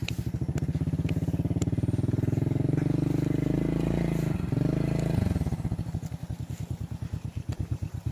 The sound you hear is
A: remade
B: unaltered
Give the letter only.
B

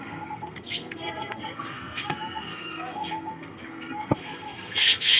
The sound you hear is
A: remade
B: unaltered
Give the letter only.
A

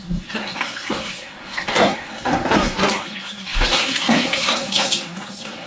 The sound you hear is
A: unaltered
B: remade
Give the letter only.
B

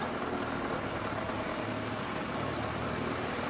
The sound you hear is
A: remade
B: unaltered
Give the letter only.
B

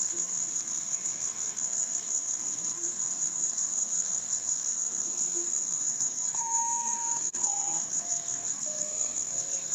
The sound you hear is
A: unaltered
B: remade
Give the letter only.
B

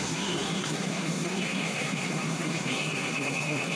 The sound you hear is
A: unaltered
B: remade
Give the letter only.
B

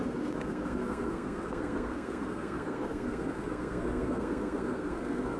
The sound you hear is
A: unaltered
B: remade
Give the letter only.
B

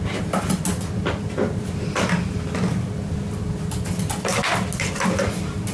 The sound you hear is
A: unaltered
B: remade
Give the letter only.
A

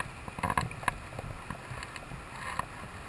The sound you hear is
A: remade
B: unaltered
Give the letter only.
B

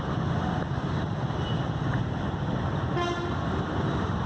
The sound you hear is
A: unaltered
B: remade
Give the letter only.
A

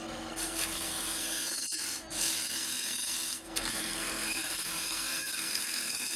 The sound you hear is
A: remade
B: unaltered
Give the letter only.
A